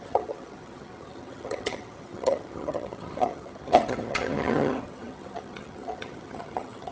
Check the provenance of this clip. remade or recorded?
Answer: remade